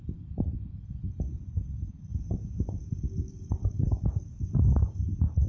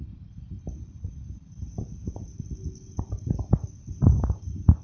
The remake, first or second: first